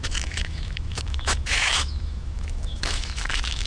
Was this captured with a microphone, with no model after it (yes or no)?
no